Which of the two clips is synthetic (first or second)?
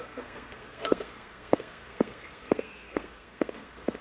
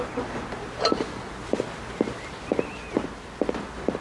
first